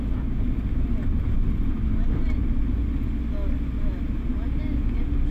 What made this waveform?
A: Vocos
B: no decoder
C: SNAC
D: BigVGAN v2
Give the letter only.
B